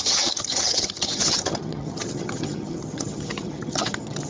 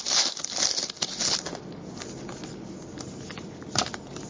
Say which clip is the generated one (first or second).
first